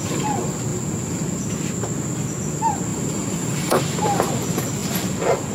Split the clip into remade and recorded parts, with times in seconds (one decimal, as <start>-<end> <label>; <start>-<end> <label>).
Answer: 0.0-2.9 recorded; 2.9-3.8 remade; 3.8-5.5 recorded